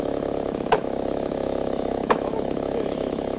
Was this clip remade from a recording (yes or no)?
yes